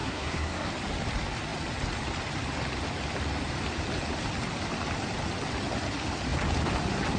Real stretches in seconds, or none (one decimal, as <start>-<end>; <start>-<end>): 0.7-7.2